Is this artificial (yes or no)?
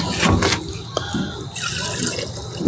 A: no